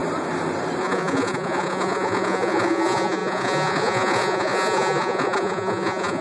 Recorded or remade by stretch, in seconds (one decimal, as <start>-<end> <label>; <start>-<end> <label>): 0.0-0.8 recorded; 0.8-6.2 remade